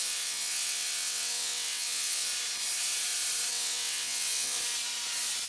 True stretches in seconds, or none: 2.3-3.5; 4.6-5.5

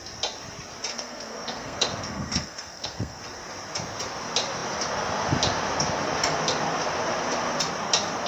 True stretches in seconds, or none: 0.0-0.9; 3.2-8.3

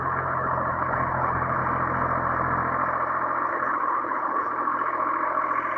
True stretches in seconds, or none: 1.6-3.5; 4.5-5.8

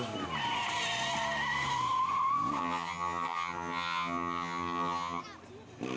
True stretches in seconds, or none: 0.0-2.6; 5.2-6.0

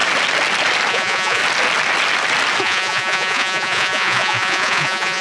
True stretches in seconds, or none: 0.0-0.9; 1.4-2.6

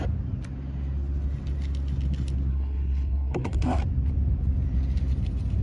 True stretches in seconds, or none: 0.0-2.5; 3.8-5.6

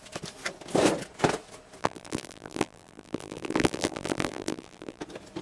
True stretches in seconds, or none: 0.0-1.8; 5.0-5.4

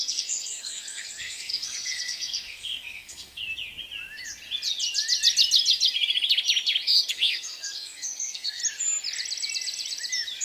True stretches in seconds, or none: 3.4-7.1; 8.6-10.4